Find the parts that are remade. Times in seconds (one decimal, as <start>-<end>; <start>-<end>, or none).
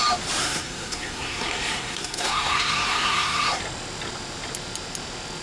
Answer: 0.4-3.6